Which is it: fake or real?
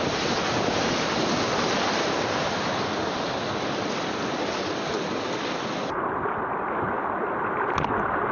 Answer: real